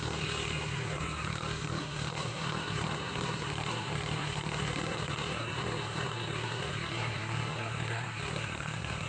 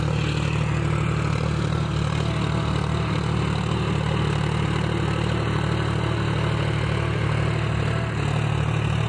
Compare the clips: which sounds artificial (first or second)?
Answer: first